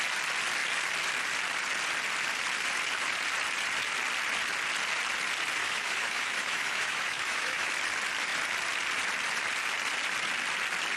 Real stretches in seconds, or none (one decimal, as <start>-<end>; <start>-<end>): 0.0-5.6; 7.7-11.0